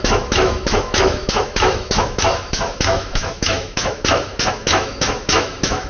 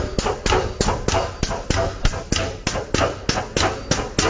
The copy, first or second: first